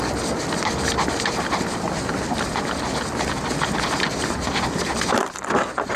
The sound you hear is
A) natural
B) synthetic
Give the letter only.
A